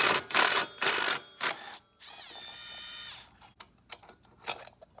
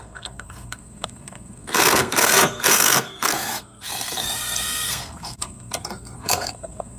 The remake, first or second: second